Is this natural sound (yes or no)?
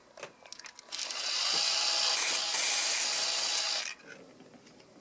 yes